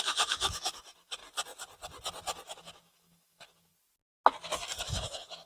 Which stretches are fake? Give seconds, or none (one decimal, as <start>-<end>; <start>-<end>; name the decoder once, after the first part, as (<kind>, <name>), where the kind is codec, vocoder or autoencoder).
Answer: 0.0-1.2 (autoencoder, DAC-VAE); 2.6-3.7; 4.9-5.5